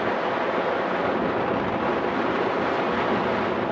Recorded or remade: recorded